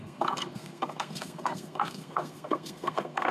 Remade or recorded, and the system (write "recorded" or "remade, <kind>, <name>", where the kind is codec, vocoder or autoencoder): remade, codec, SNAC